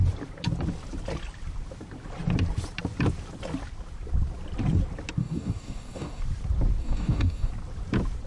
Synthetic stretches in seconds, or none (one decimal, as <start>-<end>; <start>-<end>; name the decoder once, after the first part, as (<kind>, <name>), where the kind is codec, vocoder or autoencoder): 5.2-6.2 (codec, DAC); 6.8-7.5